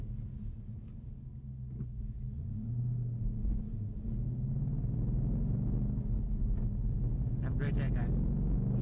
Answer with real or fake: real